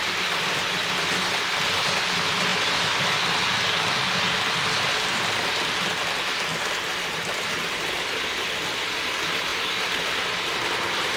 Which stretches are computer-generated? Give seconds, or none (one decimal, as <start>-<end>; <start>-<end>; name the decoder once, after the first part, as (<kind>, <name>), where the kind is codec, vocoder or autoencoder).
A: 2.5-3.0 (vocoder, BigVGAN v2); 9.5-10.7